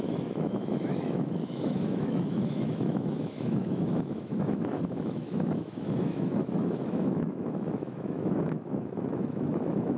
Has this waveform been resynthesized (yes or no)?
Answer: yes